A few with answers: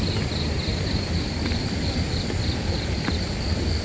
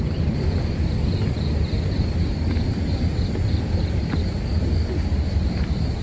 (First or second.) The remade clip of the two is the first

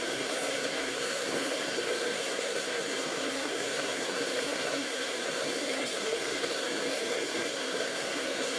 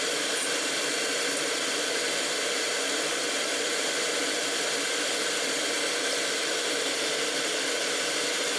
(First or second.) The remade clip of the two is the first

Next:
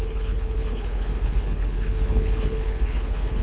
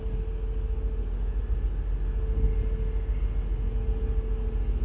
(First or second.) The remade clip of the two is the first